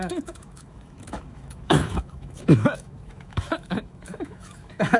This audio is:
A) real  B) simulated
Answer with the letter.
B